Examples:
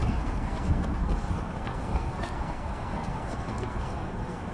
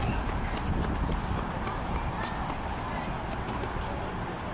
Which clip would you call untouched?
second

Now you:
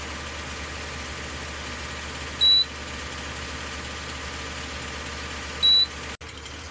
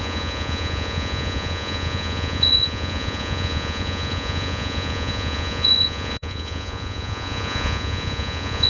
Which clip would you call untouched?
first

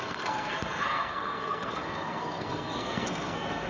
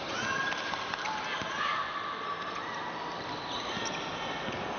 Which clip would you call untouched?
second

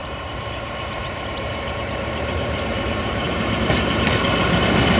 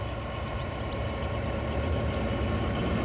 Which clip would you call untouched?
second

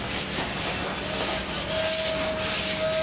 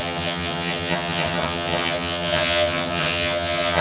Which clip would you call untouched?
first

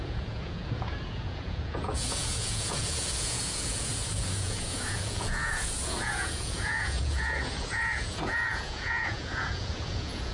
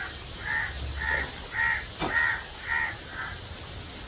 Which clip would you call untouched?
second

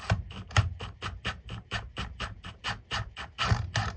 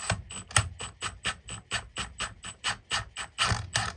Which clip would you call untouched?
second